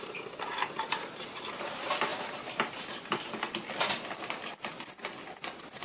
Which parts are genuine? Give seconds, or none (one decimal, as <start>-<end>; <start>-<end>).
0.0-5.8